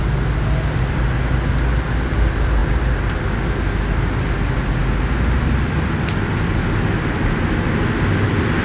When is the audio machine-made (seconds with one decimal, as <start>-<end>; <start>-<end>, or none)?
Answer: none